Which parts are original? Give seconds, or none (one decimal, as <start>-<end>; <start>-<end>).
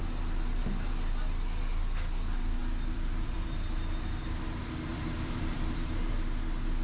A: 0.0-2.6; 3.5-4.9; 6.1-6.8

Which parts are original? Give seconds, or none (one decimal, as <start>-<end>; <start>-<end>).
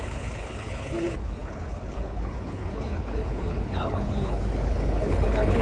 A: none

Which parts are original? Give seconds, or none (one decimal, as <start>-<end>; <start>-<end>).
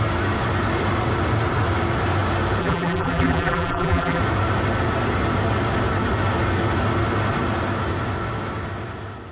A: 0.0-2.6; 4.2-9.3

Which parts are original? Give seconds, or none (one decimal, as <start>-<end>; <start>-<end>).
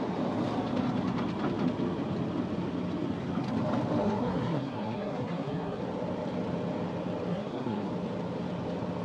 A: 0.0-4.0; 5.8-7.3; 7.9-9.0